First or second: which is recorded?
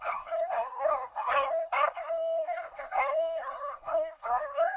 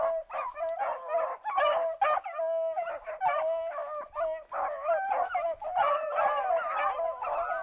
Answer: second